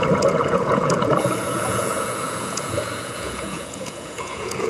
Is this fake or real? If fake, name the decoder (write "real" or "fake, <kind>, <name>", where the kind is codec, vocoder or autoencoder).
fake, vocoder, Vocos